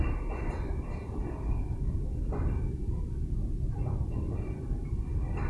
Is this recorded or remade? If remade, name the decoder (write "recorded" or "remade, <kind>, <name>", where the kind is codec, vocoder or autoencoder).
recorded